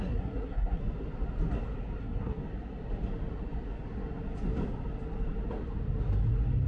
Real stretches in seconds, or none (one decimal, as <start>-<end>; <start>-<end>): 0.8-2.0; 2.4-6.7